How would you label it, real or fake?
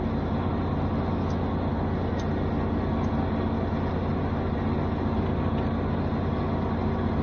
real